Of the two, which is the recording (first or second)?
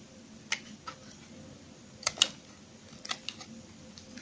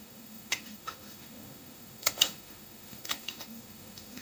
first